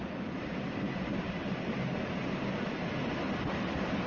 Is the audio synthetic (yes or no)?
no